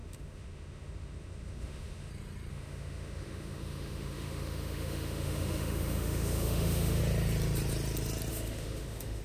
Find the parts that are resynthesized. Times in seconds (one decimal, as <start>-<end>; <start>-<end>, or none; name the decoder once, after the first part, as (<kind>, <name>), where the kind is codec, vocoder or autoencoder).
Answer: 0.0-2.1 (autoencoder, DAC-VAE); 2.5-7.0; 8.3-9.2